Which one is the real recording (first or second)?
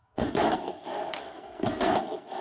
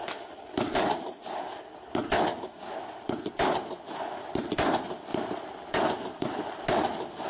second